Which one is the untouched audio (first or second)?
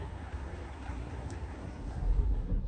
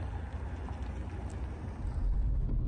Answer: second